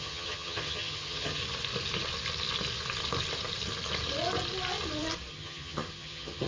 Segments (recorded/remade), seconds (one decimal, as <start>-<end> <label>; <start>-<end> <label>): 0.0-1.4 remade; 1.4-5.3 recorded; 5.3-6.5 remade